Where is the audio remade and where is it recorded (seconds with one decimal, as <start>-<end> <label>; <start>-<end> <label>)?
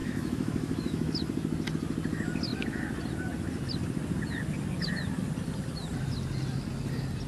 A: 0.0-1.1 remade; 1.1-7.3 recorded